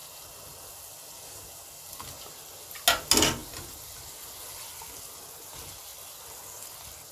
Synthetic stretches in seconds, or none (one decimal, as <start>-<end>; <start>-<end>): 5.9-6.4